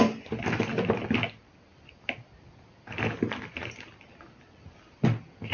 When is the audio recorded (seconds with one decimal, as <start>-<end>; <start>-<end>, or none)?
0.0-5.5